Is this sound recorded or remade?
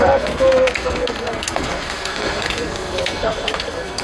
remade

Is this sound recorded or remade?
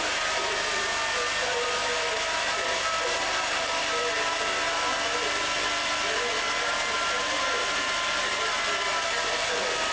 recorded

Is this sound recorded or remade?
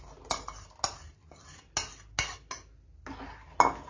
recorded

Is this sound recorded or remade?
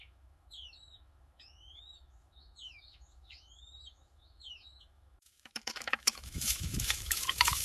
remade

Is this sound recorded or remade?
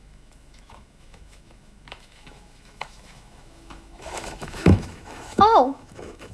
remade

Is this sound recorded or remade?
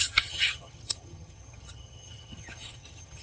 remade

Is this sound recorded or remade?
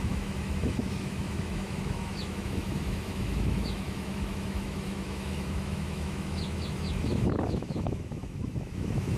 remade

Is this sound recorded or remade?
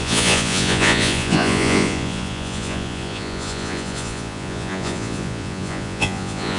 remade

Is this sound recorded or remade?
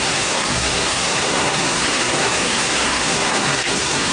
remade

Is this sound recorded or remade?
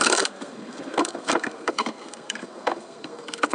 remade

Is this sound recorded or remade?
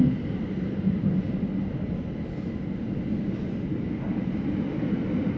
recorded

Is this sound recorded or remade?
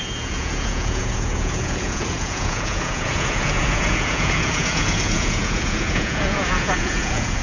remade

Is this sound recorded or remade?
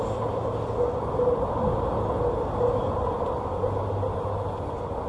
recorded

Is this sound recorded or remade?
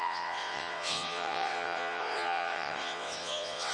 remade